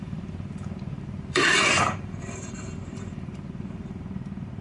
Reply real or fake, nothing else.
fake